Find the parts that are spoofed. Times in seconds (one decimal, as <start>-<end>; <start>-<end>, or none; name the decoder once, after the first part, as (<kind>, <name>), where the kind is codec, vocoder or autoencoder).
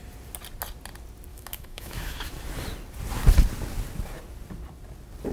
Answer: 1.3-2.3 (autoencoder, DAC-VAE)